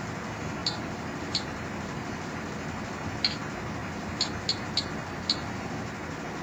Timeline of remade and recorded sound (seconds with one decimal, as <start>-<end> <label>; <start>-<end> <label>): 0.0-0.6 recorded; 0.6-2.5 remade; 2.5-3.8 recorded; 3.8-5.6 remade; 5.6-6.4 recorded